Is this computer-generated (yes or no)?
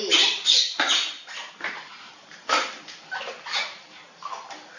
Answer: no